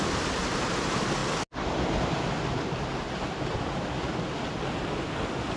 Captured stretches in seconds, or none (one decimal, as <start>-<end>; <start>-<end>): 0.0-5.6